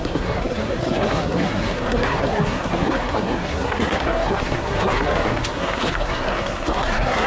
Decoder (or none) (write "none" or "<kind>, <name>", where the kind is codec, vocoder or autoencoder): codec, SNAC